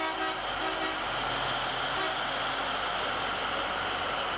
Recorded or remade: recorded